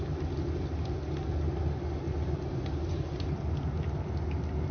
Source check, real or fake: real